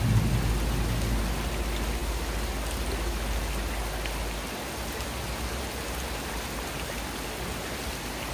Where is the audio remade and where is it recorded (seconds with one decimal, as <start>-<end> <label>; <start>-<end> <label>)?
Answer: 0.0-8.3 recorded